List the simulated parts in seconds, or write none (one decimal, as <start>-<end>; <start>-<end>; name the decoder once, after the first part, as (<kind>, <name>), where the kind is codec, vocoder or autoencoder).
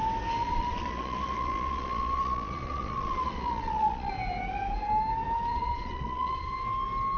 0.4-4.1 (vocoder, Vocos); 5.5-6.5